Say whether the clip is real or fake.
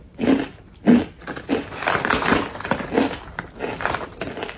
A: real